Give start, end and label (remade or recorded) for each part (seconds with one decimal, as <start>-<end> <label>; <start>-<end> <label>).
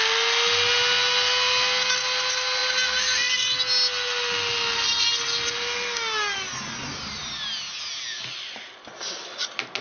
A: 0.0-9.8 recorded